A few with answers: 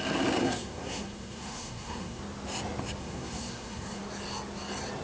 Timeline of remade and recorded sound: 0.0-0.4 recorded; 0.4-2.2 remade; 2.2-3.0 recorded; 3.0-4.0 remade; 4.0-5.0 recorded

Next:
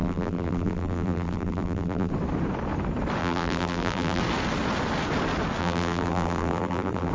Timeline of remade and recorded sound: 0.0-2.1 remade; 2.1-3.2 recorded; 3.2-4.2 remade; 4.2-5.6 recorded; 5.6-7.1 remade

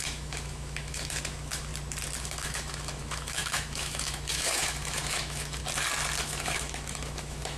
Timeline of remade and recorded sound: 0.0-1.7 remade; 1.7-2.2 recorded; 2.2-5.6 remade; 5.6-6.2 recorded; 6.2-7.6 remade

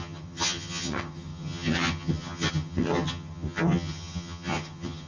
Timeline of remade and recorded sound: 0.0-5.1 remade

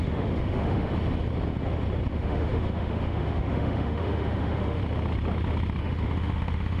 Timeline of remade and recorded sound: 0.0-0.9 remade; 0.9-2.1 recorded; 2.1-4.8 remade; 4.8-5.8 recorded; 5.8-6.8 remade

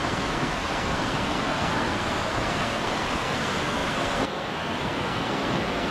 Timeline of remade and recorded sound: 0.0-5.9 remade